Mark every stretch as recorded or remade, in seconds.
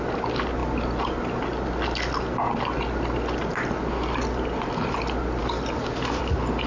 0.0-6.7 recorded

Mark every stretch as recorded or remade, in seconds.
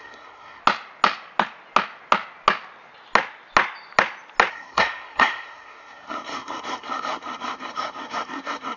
0.0-0.6 remade; 0.6-4.5 recorded; 4.5-8.8 remade